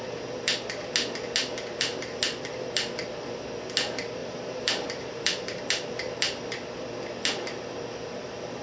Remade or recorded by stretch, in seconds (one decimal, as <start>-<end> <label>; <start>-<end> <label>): 0.0-1.4 recorded; 1.4-2.2 remade; 2.2-4.2 recorded; 4.2-5.6 remade; 5.6-8.6 recorded